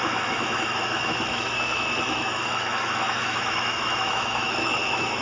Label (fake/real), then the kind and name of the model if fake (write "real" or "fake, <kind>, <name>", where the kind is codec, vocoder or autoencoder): fake, autoencoder, DAC-VAE